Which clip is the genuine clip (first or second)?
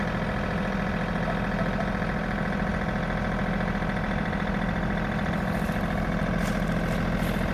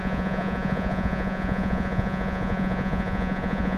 first